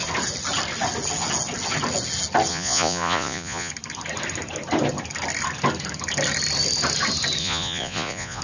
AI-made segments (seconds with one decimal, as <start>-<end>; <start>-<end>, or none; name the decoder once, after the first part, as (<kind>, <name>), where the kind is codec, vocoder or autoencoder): 2.5-3.7 (vocoder, Vocos); 7.4-8.4